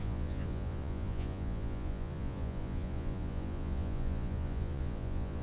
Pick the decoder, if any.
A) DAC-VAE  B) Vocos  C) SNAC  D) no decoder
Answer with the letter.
B